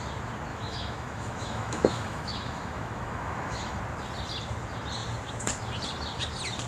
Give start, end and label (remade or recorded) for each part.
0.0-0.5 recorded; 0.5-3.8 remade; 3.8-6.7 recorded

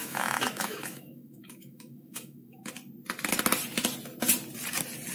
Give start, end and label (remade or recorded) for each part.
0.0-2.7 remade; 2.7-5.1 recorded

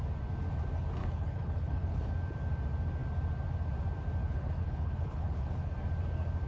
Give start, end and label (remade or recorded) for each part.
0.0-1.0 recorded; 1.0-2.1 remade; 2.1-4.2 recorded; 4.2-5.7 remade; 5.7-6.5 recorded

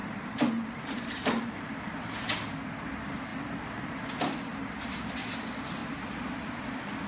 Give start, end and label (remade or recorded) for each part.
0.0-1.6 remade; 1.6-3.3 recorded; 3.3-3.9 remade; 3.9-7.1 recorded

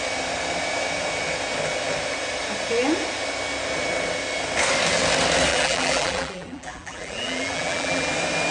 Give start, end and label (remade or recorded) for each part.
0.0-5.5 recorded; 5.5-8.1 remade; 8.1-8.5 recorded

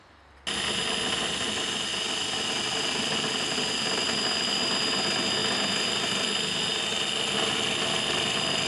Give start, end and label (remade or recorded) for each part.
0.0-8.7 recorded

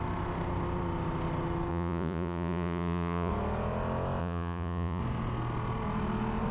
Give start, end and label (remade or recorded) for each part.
0.0-1.7 recorded; 1.7-3.3 remade; 3.3-4.2 recorded; 4.2-5.0 remade; 5.0-6.5 recorded

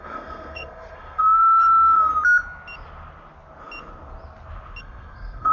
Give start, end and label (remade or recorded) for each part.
0.0-2.1 remade; 2.1-4.8 recorded; 4.8-5.5 remade